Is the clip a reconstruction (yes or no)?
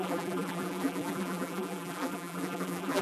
yes